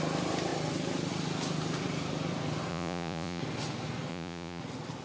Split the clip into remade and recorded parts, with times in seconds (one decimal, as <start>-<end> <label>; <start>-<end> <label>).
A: 0.0-2.7 recorded; 2.7-3.4 remade; 3.4-4.1 recorded; 4.1-4.6 remade; 4.6-5.0 recorded